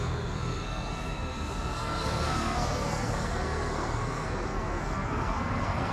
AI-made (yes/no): yes